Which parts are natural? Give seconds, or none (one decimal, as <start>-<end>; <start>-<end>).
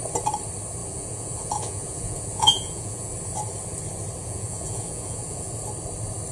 0.0-0.8; 3.1-4.2; 5.5-6.3